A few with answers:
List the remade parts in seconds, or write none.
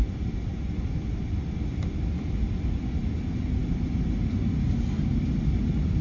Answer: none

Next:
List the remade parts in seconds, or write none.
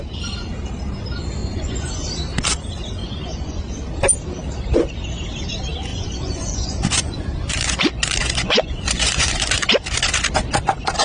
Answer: 1.4-2.1; 3.0-3.6; 5.9-9.7